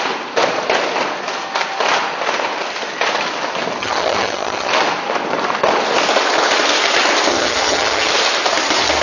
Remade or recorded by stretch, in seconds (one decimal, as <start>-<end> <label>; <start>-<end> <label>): 0.0-3.8 recorded; 3.8-4.7 remade; 4.7-7.3 recorded; 7.3-8.1 remade; 8.1-9.0 recorded